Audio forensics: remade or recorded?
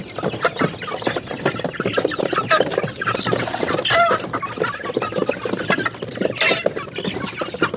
recorded